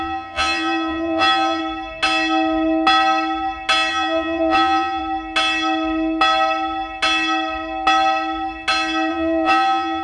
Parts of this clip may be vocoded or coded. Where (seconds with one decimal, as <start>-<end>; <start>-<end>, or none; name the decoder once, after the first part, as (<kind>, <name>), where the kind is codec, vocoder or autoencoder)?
0.0-1.6 (vocoder, BigVGAN v2); 3.9-5.0; 9.1-10.0